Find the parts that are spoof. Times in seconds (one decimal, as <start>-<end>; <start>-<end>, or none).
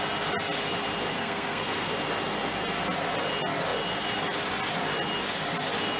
1.1-1.9